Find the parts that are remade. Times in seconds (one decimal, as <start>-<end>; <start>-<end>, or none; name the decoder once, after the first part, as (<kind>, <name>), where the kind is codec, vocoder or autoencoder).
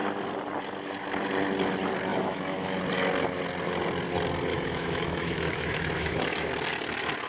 2.1-2.8 (autoencoder, DAC-VAE); 4.5-6.5